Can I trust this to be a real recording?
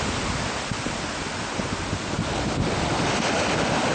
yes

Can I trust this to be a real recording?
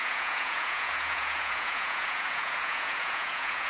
no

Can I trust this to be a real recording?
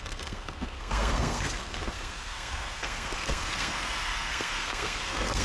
no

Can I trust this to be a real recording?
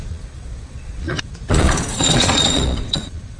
no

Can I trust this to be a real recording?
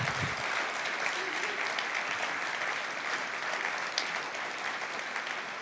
yes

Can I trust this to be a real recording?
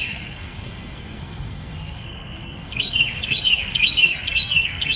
no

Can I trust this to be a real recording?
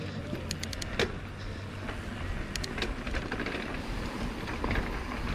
yes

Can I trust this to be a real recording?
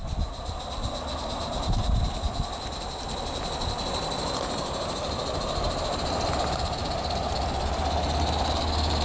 yes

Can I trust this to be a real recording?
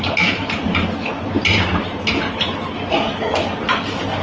yes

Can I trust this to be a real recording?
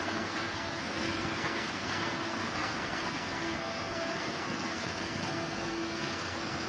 no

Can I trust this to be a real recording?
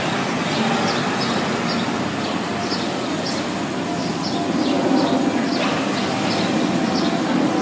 yes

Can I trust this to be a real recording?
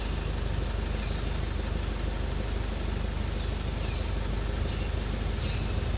yes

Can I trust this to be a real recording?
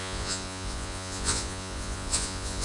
no